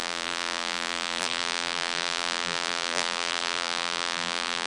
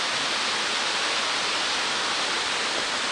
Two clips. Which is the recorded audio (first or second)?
second